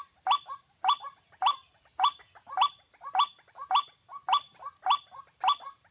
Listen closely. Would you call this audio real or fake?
real